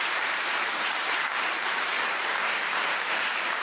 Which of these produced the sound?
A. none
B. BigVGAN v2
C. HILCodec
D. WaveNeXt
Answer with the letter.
B